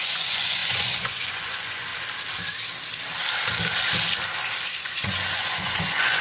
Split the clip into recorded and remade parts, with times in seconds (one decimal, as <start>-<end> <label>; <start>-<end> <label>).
0.0-1.9 remade; 1.9-4.8 recorded; 4.8-6.2 remade